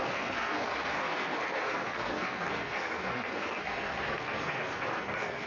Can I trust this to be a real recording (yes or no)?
no